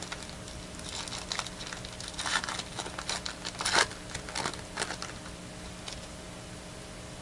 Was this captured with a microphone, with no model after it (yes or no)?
yes